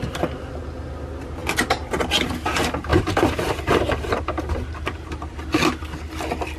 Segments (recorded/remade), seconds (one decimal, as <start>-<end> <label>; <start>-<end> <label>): 0.0-2.9 recorded; 2.9-5.4 remade; 5.4-6.6 recorded